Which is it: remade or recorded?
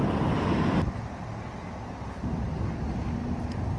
recorded